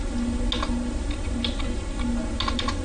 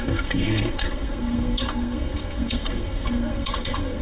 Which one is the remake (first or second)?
second